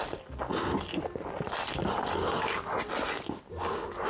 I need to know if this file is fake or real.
real